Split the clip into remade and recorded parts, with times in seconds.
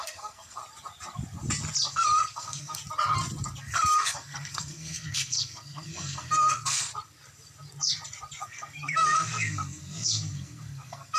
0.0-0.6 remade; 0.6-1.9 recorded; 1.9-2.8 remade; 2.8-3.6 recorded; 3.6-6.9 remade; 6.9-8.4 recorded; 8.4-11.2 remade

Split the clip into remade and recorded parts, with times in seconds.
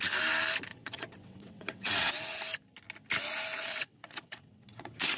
0.0-0.7 recorded; 0.7-2.1 remade; 2.1-3.5 recorded; 3.5-5.2 remade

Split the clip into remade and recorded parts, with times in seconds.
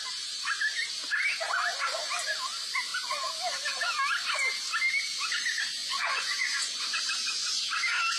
0.0-5.8 recorded; 5.8-7.0 remade; 7.0-8.2 recorded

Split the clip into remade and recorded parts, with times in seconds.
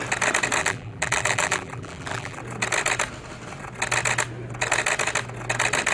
0.0-0.6 recorded; 0.6-2.4 remade; 2.4-5.9 recorded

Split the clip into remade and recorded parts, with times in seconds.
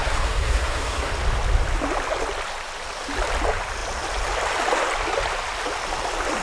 0.0-1.1 remade; 1.1-6.4 recorded